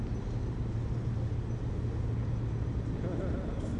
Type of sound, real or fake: real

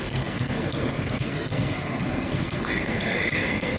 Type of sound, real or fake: fake